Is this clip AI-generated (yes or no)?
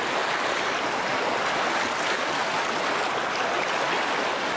no